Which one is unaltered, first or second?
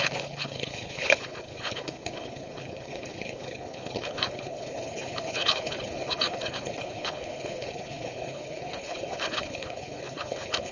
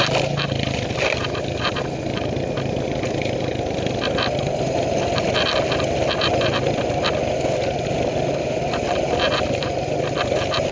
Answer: second